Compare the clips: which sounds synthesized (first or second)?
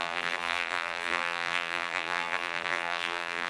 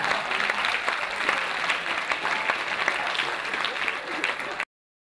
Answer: first